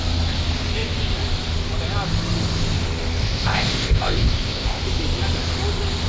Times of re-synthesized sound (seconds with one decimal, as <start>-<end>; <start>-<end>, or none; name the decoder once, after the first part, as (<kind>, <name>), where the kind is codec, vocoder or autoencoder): 3.2-4.8 (codec, ZipCodec)